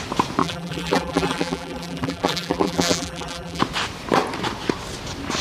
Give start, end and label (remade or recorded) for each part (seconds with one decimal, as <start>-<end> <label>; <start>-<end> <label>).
0.0-0.4 recorded; 0.4-3.6 remade; 3.6-5.4 recorded